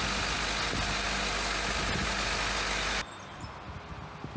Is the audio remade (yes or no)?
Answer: no